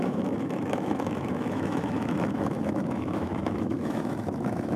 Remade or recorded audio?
remade